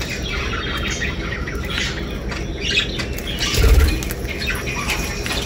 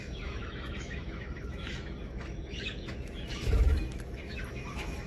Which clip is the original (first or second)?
first